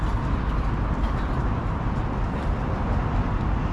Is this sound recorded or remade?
recorded